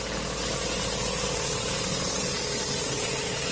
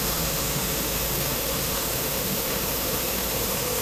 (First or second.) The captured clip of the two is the first